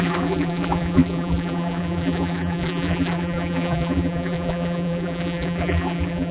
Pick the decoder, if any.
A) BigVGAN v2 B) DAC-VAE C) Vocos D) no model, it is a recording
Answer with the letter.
A